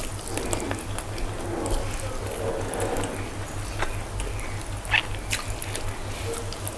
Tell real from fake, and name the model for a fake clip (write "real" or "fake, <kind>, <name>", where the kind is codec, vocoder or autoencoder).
real